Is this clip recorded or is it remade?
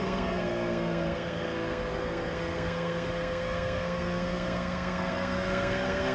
remade